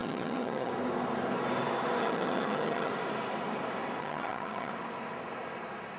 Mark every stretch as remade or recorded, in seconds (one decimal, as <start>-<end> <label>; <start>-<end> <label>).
0.0-0.7 remade; 0.7-2.0 recorded; 2.0-2.9 remade; 2.9-4.0 recorded; 4.0-4.7 remade; 4.7-6.0 recorded